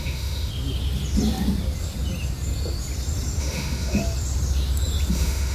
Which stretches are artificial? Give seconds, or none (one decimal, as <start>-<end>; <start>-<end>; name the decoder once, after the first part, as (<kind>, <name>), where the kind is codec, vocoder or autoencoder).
0.0-0.5 (autoencoder, DAC-VAE); 3.4-4.0; 5.1-5.5